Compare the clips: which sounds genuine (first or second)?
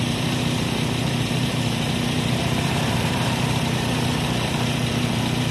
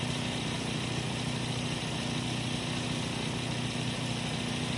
second